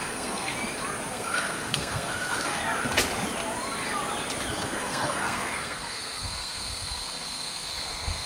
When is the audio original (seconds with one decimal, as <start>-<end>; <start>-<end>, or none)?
0.5-1.1; 2.6-4.5